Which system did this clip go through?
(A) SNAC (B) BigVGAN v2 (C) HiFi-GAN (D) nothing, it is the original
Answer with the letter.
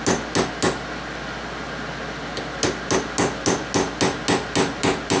D